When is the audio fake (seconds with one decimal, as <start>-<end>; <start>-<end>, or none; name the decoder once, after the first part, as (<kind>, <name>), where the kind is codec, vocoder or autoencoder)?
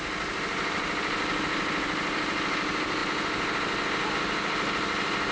none